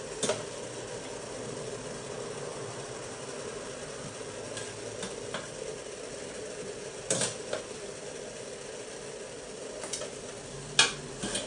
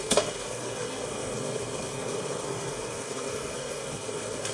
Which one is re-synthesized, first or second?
second